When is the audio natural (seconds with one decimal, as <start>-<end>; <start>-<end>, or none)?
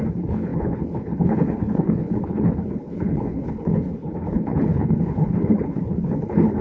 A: none